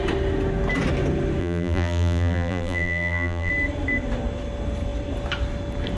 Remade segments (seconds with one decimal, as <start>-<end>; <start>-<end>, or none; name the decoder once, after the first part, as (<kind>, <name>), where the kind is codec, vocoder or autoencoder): 1.4-3.5 (vocoder, BigVGAN v2)